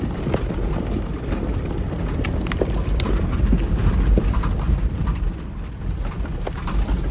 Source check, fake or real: fake